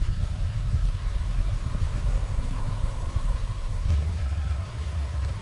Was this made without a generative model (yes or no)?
no